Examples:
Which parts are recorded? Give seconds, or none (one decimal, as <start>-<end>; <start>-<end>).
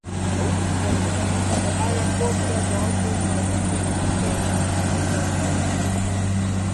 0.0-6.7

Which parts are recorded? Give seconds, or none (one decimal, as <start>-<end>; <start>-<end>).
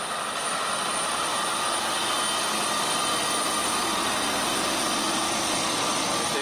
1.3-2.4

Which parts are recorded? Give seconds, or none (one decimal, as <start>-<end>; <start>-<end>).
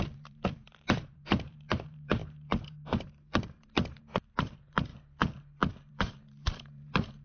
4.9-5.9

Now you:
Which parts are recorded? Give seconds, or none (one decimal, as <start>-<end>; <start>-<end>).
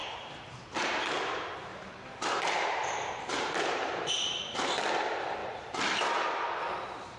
1.0-1.7; 4.1-7.2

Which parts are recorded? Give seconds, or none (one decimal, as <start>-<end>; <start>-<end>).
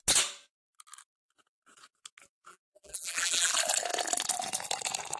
0.0-2.5; 3.5-5.2